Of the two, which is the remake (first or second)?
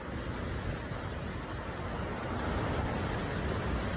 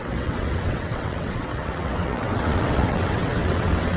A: second